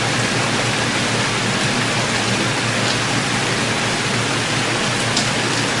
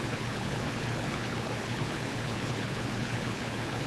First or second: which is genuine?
first